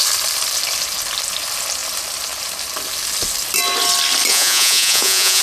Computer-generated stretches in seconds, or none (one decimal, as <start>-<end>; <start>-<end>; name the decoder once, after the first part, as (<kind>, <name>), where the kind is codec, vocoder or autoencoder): 4.3-5.4 (vocoder, Vocos)